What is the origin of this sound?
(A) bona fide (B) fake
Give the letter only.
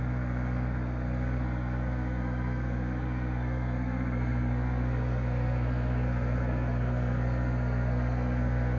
B